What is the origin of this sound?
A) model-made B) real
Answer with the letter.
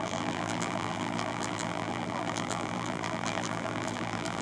A